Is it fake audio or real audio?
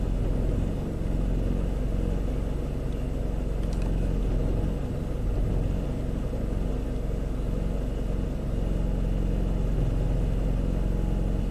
real